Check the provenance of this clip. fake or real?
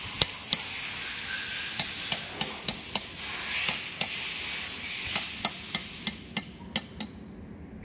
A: real